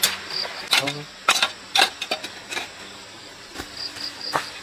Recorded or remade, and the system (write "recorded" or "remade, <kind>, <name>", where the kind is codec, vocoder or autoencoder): recorded